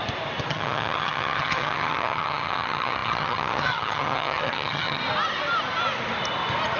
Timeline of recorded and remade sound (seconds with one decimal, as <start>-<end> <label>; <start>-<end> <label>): 0.0-0.5 recorded; 0.5-5.0 remade; 5.0-6.8 recorded